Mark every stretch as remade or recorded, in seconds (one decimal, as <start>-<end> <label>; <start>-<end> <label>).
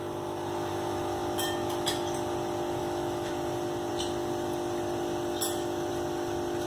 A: 0.0-0.7 recorded; 0.7-1.2 remade; 1.2-2.8 recorded; 2.8-3.3 remade; 3.3-6.7 recorded